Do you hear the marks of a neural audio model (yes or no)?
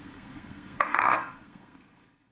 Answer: yes